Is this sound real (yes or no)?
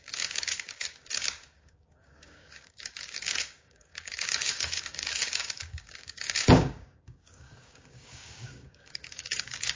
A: no